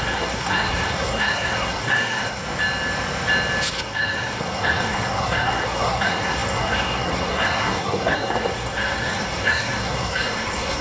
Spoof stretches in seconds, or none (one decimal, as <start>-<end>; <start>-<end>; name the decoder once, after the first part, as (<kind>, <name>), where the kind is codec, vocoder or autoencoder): 0.0-2.4 (codec, SNAC); 3.7-10.8